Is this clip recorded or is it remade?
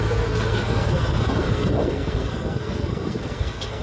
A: remade